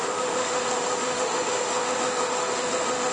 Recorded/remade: remade